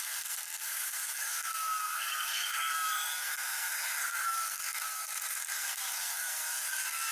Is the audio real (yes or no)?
no